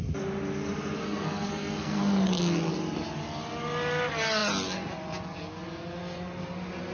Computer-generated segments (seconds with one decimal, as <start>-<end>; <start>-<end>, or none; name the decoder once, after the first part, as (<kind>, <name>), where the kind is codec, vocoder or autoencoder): 1.0-2.0 (codec, SNAC)